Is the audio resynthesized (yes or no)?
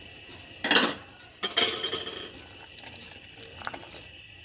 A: no